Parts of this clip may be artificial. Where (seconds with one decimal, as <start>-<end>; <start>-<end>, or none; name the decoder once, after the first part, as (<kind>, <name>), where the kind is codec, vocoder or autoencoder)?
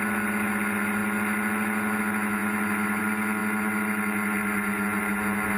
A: none